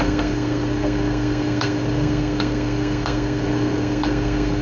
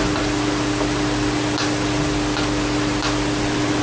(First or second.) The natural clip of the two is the second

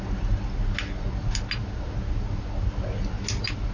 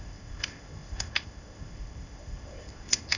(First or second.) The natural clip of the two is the first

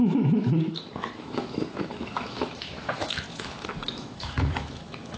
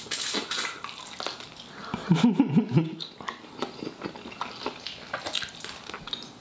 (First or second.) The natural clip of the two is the second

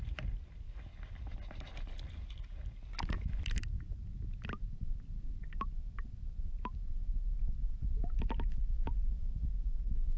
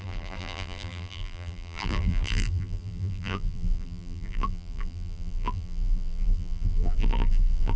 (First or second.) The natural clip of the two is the first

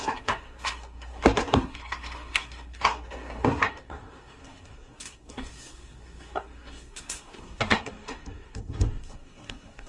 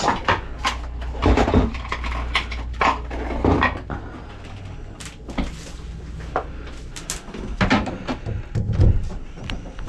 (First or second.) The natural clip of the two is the second